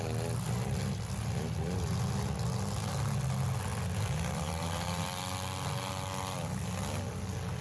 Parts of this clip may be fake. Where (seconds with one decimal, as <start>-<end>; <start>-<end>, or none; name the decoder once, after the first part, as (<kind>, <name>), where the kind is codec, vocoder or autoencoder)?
none